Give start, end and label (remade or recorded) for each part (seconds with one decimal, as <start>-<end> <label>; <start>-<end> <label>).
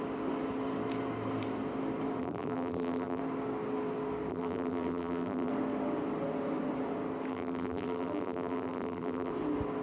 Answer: 0.0-2.2 recorded; 2.2-3.2 remade; 3.2-4.3 recorded; 4.3-5.5 remade; 5.5-7.3 recorded; 7.3-9.3 remade; 9.3-9.8 recorded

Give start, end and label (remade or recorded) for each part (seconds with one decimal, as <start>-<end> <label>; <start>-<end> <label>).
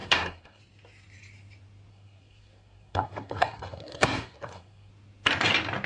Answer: 0.0-0.6 remade; 0.6-1.9 recorded; 1.9-4.9 remade; 4.9-5.9 recorded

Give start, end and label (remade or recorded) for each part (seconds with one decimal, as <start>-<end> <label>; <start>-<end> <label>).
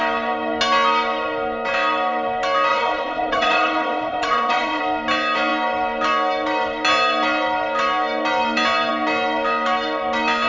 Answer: 0.0-2.7 recorded; 2.7-4.8 remade; 4.8-10.5 recorded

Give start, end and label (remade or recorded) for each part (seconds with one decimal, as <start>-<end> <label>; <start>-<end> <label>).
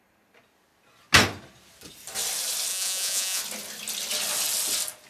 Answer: 0.0-2.7 recorded; 2.7-3.4 remade; 3.4-5.1 recorded